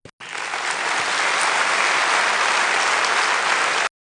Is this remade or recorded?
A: recorded